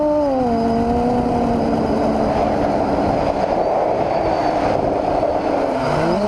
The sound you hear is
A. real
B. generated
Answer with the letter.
A